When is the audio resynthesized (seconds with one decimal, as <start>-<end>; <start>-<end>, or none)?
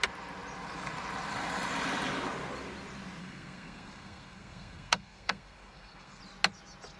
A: 3.2-6.2